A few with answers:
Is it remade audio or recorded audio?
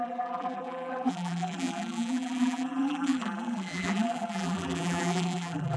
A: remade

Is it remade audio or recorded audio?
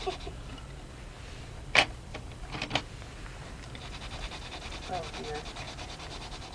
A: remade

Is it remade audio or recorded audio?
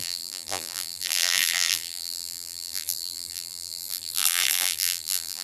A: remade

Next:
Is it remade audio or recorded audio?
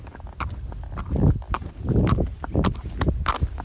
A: recorded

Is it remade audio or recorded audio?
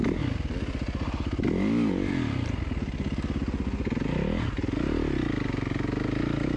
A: recorded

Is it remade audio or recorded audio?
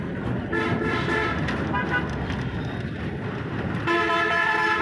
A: remade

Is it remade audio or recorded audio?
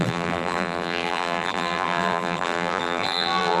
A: remade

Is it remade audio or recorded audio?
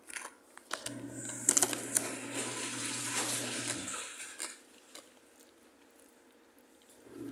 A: recorded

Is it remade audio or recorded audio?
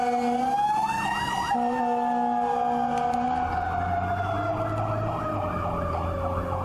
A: recorded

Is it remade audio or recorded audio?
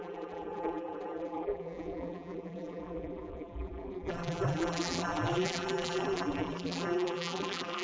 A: remade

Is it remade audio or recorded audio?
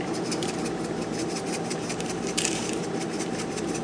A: remade